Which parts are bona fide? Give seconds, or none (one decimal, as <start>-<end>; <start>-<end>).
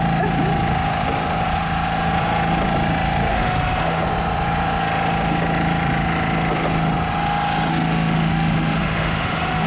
0.0-3.3; 4.0-7.7